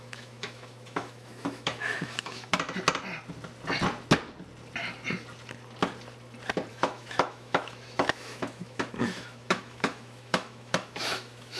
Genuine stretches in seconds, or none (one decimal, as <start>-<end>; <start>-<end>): 2.5-6.7